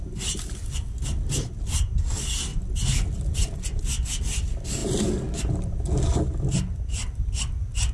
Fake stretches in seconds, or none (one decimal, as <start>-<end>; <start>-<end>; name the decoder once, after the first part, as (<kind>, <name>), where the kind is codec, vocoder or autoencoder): none